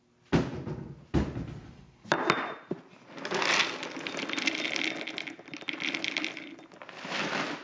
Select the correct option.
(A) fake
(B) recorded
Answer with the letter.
B